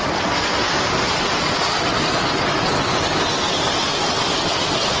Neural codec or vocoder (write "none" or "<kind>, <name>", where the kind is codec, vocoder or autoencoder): none